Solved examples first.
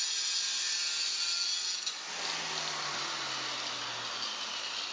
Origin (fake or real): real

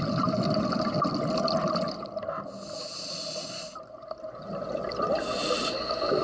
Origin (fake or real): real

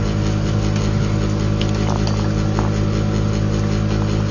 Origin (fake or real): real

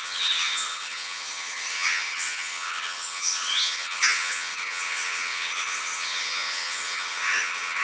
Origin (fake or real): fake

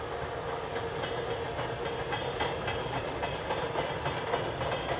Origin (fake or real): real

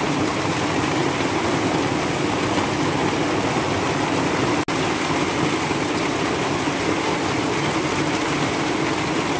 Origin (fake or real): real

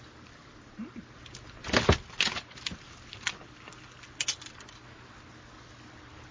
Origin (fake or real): real